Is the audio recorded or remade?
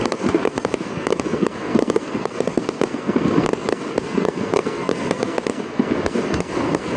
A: remade